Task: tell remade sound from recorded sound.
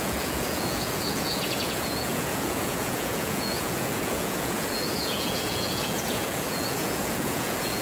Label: remade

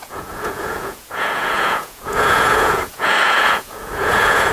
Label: remade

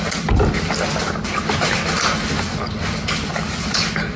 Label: recorded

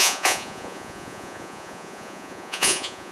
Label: remade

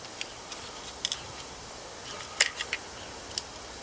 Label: recorded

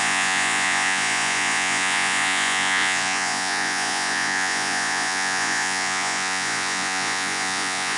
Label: remade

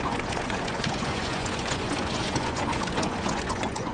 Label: remade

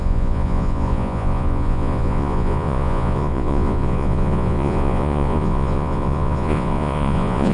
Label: remade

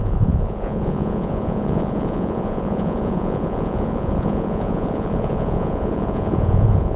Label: remade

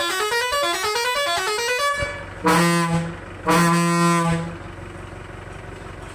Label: recorded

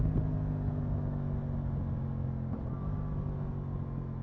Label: recorded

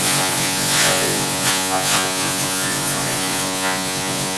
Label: remade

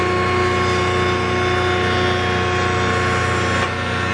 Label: recorded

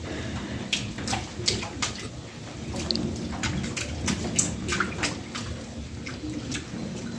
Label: recorded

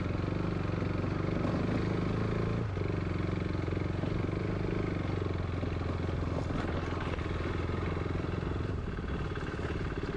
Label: recorded